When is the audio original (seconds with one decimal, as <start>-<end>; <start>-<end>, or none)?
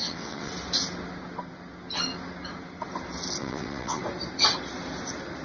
0.5-3.4; 4.0-5.4